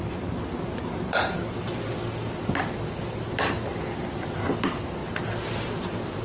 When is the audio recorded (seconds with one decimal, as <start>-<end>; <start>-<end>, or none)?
0.0-6.2